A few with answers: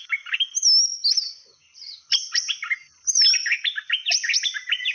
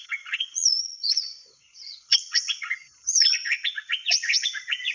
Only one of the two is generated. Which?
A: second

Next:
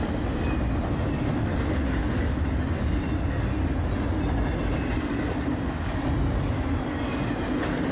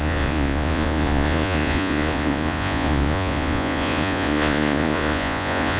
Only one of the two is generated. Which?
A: second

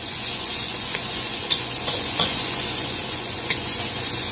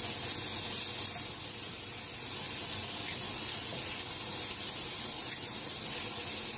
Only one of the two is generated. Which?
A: first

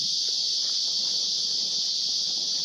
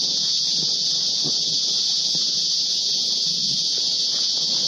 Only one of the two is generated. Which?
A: second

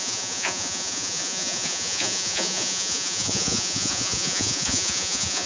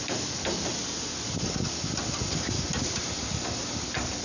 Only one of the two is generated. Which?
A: first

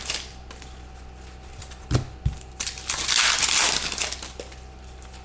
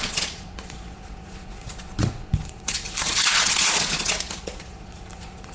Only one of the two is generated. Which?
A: second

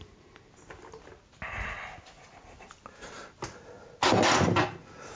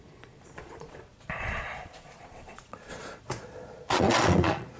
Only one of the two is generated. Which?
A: second